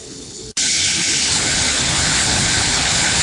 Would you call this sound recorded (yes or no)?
no